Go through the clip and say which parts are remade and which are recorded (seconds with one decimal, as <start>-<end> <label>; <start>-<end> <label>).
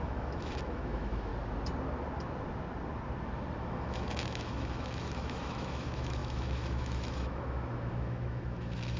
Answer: 0.0-1.3 remade; 1.3-3.6 recorded; 3.6-9.0 remade